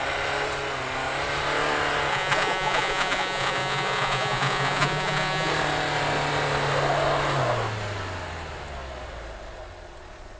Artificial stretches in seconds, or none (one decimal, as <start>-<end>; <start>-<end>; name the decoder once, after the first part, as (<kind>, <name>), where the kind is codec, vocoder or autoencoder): 2.1-5.5 (vocoder, Vocos)